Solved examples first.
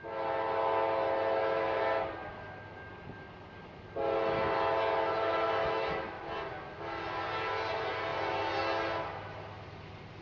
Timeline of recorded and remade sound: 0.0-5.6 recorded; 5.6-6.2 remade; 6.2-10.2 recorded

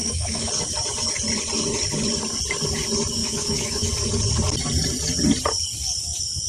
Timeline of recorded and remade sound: 0.0-0.5 remade; 0.5-3.2 recorded; 3.2-3.9 remade; 3.9-6.5 recorded

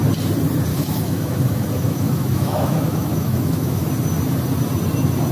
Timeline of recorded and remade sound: 0.0-0.7 recorded; 0.7-3.9 remade; 3.9-5.3 recorded